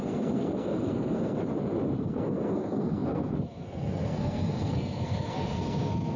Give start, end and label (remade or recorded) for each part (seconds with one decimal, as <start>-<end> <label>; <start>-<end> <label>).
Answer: 0.0-1.4 remade; 1.4-2.0 recorded; 2.0-6.2 remade